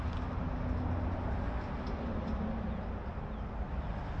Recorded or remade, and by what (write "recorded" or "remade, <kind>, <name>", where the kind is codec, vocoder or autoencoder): recorded